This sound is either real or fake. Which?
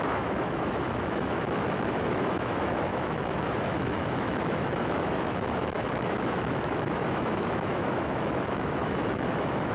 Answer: fake